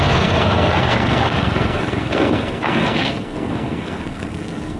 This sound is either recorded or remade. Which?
remade